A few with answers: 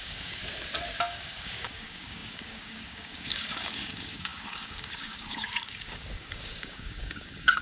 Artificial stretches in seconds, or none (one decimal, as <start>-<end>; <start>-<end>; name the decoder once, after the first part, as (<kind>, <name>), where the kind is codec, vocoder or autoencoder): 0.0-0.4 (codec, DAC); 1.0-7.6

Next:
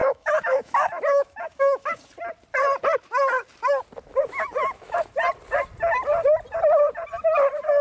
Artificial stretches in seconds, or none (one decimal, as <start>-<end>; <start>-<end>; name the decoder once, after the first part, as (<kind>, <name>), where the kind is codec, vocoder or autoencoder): 0.0-2.0 (autoencoder, DAC-VAE); 4.1-5.1

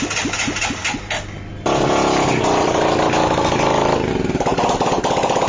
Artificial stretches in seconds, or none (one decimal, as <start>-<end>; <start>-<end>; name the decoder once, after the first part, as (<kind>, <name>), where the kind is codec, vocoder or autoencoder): none

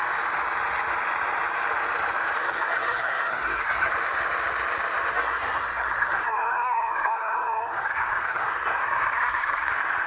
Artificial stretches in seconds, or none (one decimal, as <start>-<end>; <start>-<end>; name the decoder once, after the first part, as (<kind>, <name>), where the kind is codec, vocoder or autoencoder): 2.4-3.9 (codec, SNAC); 5.1-9.7